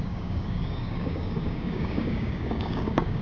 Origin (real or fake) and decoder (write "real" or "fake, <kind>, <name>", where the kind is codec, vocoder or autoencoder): fake, codec, DAC